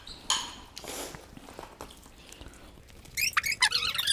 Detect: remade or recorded recorded